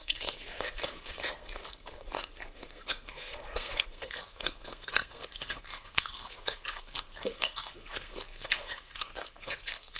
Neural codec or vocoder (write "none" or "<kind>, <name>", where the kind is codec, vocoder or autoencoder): codec, SNAC